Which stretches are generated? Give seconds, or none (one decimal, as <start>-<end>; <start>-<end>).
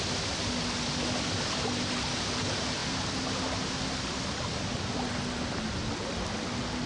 none